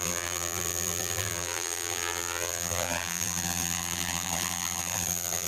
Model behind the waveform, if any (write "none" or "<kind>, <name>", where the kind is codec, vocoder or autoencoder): vocoder, BigVGAN v2